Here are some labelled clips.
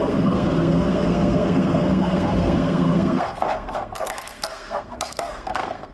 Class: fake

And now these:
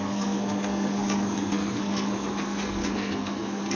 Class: fake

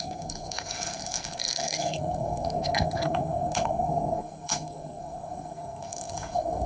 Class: fake